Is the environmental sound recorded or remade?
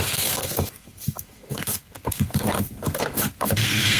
remade